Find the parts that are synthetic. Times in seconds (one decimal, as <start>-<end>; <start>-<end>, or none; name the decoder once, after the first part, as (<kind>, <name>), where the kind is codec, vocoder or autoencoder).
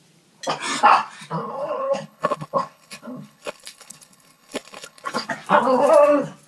1.4-5.3 (codec, HILCodec)